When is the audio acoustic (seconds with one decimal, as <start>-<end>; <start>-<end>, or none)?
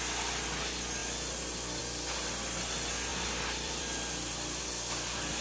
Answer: 0.0-3.1; 4.6-5.4